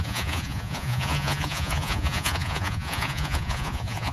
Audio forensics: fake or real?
fake